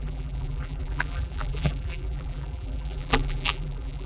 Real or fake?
fake